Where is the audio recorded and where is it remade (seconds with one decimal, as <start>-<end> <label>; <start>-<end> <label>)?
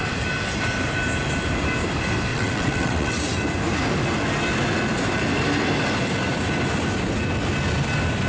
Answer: 0.0-2.3 recorded; 2.3-3.2 remade; 3.2-8.3 recorded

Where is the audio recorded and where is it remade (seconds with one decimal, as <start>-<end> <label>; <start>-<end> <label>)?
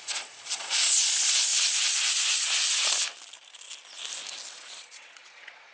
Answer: 0.0-1.5 remade; 1.5-4.5 recorded; 4.5-5.7 remade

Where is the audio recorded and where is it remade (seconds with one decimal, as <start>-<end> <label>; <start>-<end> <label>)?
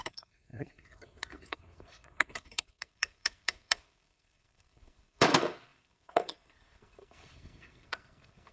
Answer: 0.0-8.5 remade